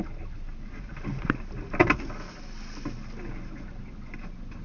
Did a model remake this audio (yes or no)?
no